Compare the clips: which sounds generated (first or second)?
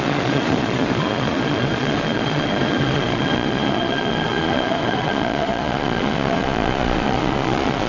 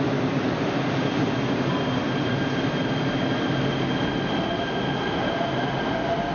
first